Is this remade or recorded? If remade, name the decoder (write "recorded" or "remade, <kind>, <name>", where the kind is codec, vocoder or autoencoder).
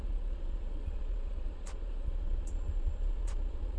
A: remade, vocoder, Vocos